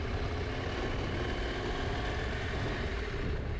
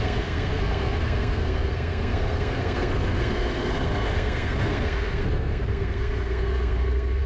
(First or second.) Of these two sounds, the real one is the first